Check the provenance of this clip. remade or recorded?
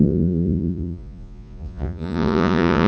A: remade